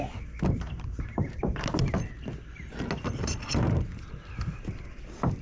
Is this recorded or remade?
recorded